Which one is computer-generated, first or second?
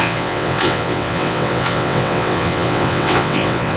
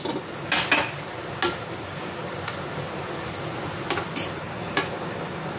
first